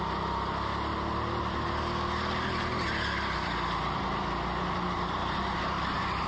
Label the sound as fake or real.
real